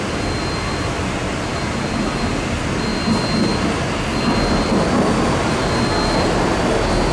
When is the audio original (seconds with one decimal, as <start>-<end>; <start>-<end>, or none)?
0.0-7.1